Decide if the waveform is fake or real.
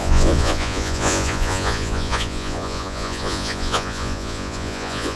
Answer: fake